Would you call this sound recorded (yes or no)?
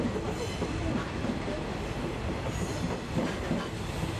yes